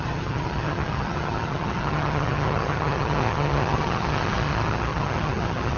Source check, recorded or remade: remade